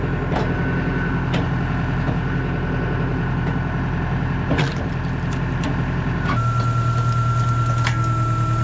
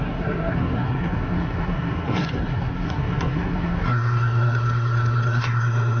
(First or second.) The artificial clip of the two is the second